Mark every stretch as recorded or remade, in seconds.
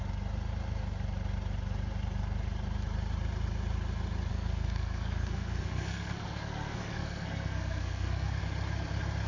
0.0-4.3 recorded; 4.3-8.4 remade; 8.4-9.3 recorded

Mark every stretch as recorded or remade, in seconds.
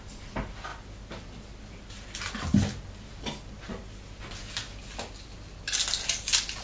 0.0-6.6 recorded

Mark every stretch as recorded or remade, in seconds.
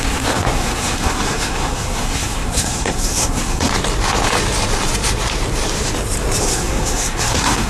0.0-3.7 remade; 3.7-6.4 recorded; 6.4-7.7 remade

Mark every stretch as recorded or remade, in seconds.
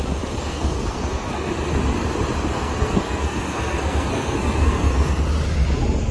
0.0-0.4 recorded; 0.4-1.5 remade; 1.5-2.5 recorded; 2.5-5.1 remade; 5.1-6.1 recorded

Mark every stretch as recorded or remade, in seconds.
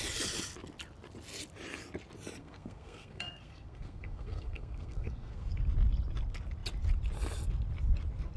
0.0-2.4 recorded; 2.4-5.5 remade; 5.5-8.4 recorded